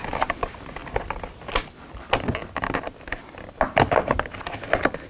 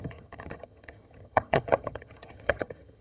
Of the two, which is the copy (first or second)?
second